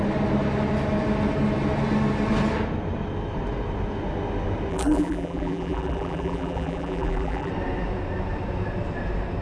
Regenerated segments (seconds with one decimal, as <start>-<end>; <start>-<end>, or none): 4.7-7.5